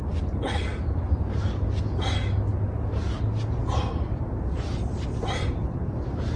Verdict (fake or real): real